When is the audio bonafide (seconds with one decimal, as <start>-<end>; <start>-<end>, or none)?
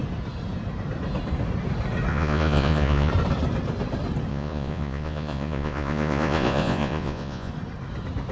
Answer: 0.0-2.1; 3.1-4.3; 7.5-8.3